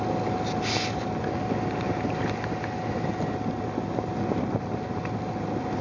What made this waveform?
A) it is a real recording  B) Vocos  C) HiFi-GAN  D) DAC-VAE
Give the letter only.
A